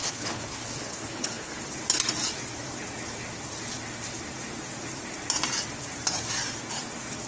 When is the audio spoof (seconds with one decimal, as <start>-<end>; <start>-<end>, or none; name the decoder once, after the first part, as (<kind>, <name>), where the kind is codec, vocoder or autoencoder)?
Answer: 0.0-1.6 (codec, HILCodec)